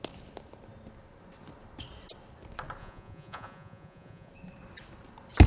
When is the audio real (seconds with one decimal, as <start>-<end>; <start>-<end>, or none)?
0.0-2.8; 4.3-5.5